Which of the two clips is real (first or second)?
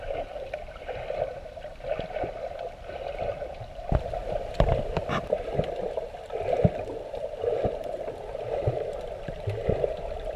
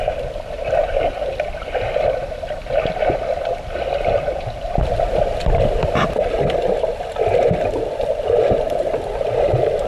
second